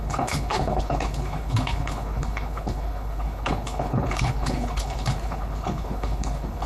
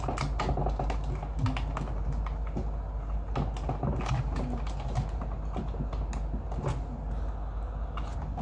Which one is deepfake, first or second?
first